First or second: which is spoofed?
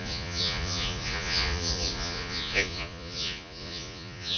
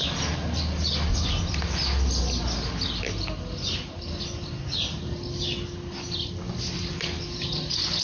first